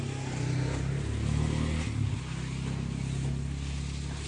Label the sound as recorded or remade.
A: recorded